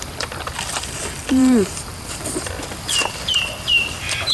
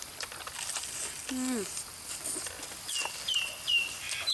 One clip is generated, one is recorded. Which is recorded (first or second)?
second